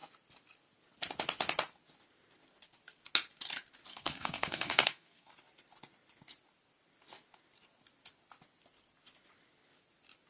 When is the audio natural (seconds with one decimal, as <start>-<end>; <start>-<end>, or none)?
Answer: 0.0-3.9; 5.3-10.3